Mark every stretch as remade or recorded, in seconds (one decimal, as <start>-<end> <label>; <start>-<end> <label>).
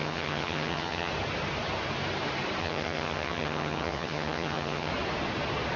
0.0-1.1 remade; 1.1-2.6 recorded; 2.6-4.9 remade; 4.9-5.8 recorded